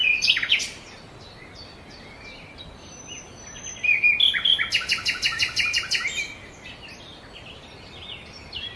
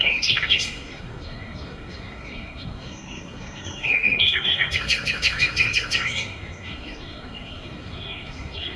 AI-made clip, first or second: second